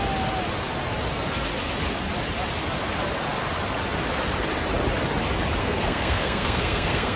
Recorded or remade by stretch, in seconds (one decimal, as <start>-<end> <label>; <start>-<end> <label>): 0.0-5.6 recorded; 5.6-7.2 remade